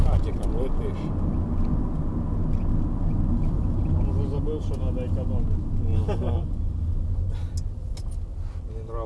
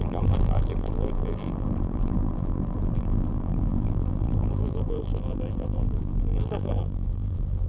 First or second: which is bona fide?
first